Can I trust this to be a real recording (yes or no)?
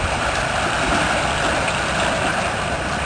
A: yes